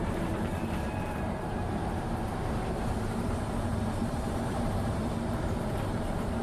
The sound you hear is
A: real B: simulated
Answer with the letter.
B